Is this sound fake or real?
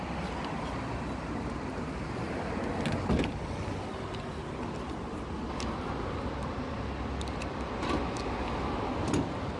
real